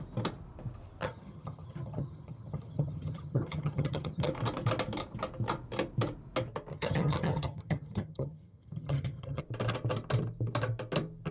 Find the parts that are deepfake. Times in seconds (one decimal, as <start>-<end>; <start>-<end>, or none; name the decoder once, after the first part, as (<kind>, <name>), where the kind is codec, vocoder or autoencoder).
1.0-4.3 (vocoder, HiFi-GAN); 6.7-9.4